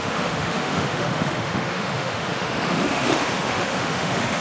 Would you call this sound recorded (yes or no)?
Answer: no